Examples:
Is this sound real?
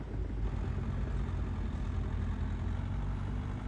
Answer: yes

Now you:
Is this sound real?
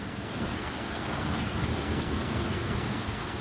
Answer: no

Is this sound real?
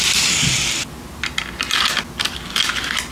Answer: yes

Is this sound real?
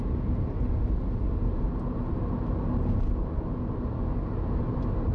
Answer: yes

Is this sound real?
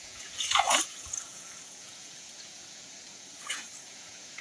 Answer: no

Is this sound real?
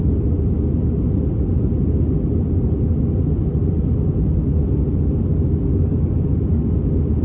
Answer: yes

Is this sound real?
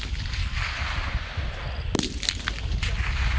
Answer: yes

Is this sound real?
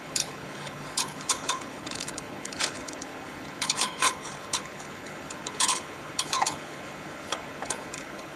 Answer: no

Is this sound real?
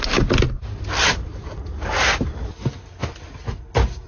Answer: yes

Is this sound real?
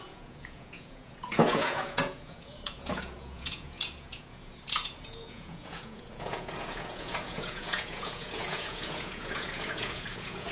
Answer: no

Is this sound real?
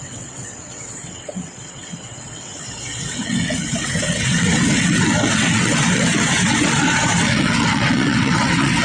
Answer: no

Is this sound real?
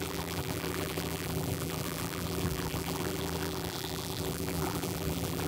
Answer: no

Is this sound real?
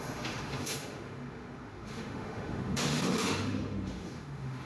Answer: no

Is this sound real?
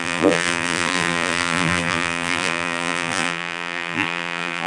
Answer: no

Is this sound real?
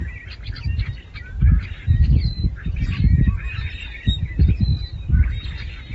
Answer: yes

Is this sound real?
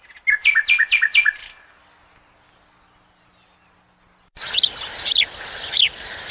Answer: yes